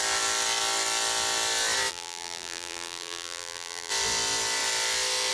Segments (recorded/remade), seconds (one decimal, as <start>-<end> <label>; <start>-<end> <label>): 0.0-1.9 recorded; 1.9-3.9 remade; 3.9-5.3 recorded

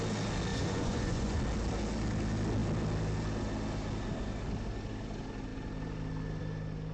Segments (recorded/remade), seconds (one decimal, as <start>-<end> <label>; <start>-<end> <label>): 0.0-0.5 recorded; 0.5-1.4 remade; 1.4-6.9 recorded